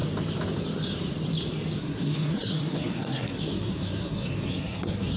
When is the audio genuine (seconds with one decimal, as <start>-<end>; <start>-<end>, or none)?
0.0-1.8